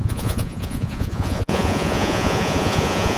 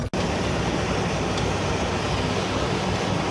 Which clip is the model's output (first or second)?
first